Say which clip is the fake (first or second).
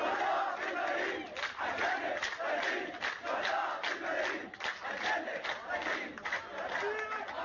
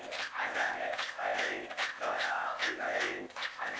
second